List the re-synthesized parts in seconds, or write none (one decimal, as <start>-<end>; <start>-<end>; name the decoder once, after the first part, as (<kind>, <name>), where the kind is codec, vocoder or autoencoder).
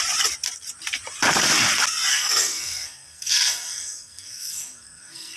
2.1-5.4 (codec, SNAC)